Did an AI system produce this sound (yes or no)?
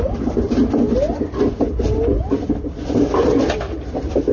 no